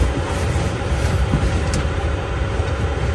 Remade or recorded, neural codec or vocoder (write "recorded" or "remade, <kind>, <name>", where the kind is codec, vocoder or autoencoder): remade, vocoder, BigVGAN v2